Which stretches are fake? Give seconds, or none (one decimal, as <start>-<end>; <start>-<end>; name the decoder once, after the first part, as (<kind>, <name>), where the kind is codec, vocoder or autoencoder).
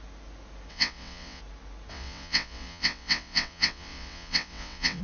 0.7-1.4 (vocoder, WaveNeXt); 1.9-5.0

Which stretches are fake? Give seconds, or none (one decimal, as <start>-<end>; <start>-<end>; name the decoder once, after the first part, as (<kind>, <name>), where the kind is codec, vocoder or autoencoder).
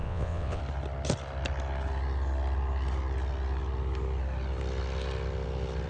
0.0-0.6 (vocoder, WaveNeXt)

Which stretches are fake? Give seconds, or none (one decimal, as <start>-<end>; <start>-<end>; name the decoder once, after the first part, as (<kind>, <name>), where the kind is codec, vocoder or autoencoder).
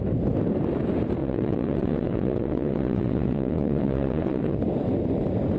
1.2-4.6 (vocoder, WaveNeXt)